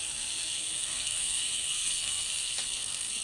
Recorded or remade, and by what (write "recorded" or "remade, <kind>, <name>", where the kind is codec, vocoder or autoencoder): remade, codec, SNAC